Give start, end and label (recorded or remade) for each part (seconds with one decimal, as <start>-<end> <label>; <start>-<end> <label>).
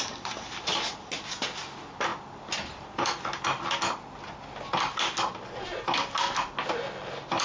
0.0-7.4 recorded